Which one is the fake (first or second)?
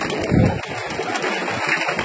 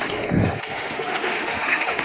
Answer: second